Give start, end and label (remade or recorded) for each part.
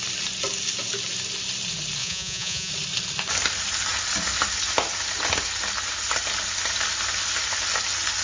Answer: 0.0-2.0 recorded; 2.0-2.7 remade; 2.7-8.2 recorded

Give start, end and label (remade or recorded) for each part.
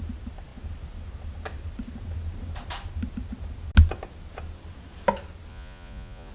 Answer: 0.0-5.5 recorded; 5.5-6.3 remade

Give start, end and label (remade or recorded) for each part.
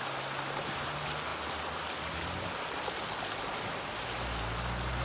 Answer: 0.0-5.0 recorded